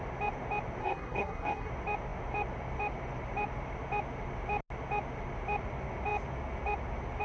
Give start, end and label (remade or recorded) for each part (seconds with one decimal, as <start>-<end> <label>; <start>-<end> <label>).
0.0-0.8 recorded; 0.8-1.7 remade; 1.7-7.2 recorded